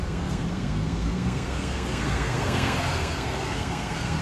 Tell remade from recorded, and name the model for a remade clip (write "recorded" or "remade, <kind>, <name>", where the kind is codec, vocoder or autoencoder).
remade, codec, SNAC